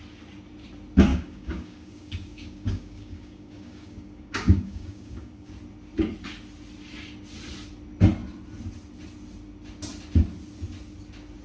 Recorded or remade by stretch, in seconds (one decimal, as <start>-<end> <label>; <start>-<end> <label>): 0.0-1.1 recorded; 1.1-5.5 remade; 5.5-11.4 recorded